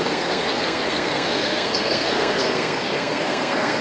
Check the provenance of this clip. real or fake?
fake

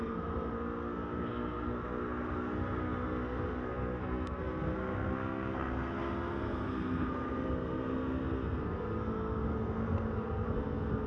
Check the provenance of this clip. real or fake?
fake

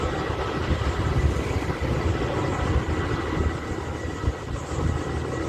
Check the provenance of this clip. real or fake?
real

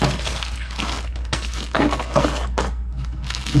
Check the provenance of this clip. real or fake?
fake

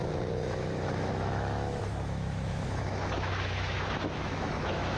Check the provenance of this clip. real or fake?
fake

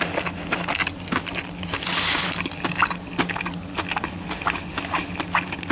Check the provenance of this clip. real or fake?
real